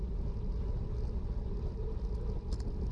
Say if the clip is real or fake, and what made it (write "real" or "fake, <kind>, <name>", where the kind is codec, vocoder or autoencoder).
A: real